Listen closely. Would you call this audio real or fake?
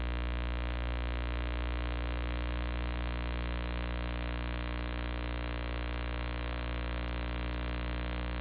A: real